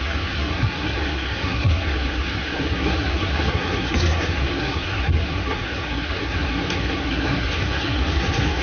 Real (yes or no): no